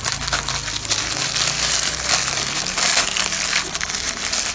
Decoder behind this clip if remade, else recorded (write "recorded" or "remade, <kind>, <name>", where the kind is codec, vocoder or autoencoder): recorded